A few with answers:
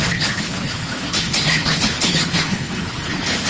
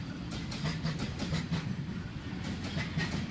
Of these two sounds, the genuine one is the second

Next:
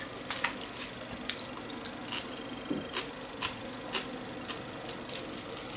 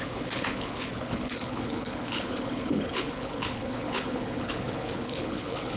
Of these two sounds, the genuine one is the first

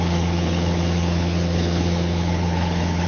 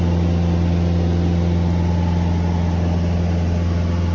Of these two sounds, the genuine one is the second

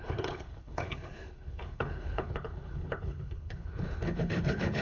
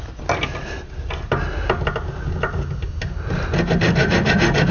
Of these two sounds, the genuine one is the second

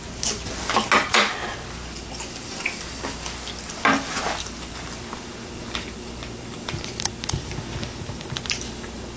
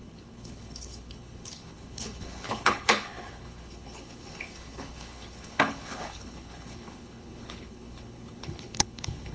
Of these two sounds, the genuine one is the first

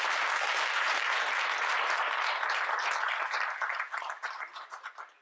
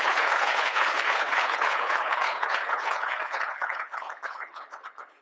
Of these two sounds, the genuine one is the first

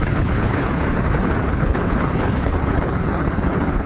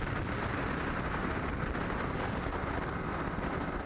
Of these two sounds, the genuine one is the second